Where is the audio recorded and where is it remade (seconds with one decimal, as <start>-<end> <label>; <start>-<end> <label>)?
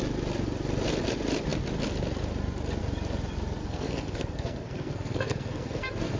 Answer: 0.0-3.6 recorded; 3.6-6.2 remade